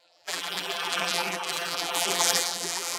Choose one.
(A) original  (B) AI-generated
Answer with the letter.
B